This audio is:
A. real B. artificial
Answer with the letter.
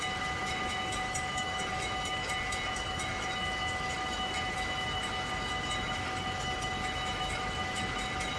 B